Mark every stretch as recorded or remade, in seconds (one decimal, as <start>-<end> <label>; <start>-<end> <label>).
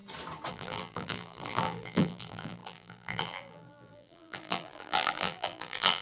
0.0-0.5 recorded; 0.5-6.0 remade